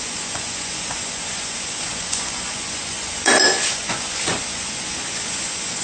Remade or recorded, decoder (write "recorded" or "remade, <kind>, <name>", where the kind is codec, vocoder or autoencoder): remade, vocoder, Vocos